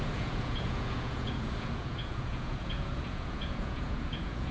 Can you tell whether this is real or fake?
fake